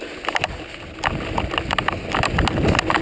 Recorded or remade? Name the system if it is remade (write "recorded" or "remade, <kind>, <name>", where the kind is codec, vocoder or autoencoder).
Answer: recorded